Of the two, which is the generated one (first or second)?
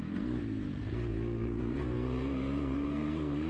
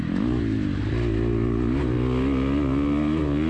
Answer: first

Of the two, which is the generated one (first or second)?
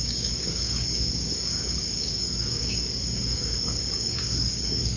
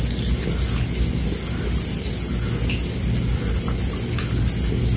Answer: first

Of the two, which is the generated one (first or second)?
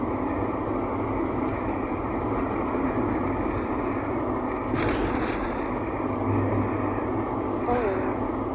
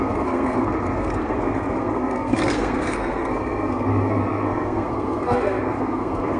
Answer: second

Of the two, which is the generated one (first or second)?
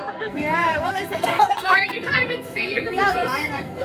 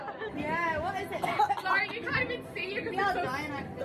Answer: first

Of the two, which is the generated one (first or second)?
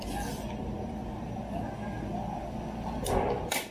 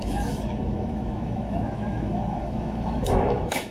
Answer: second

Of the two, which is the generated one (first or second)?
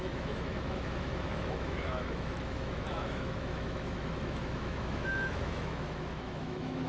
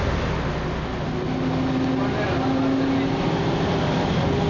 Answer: first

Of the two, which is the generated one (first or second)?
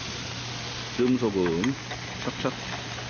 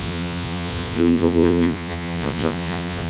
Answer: second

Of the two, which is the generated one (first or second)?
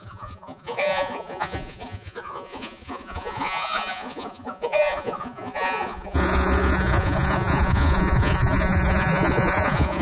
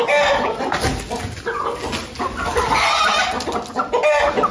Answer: first